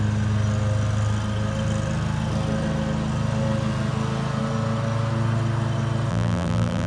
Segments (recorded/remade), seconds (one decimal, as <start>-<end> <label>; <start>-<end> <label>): 0.0-6.1 recorded; 6.1-6.9 remade